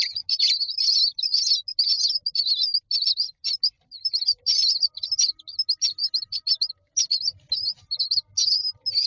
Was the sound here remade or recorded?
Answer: recorded